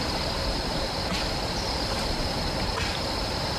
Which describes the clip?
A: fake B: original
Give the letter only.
B